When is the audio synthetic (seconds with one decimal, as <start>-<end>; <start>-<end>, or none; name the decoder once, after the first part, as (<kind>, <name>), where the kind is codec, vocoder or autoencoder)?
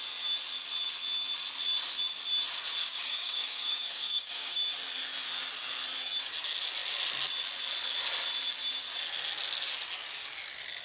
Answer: 2.8-4.6 (codec, DAC)